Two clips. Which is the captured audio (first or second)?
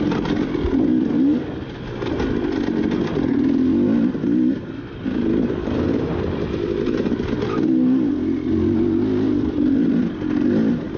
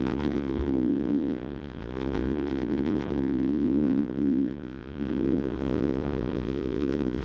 first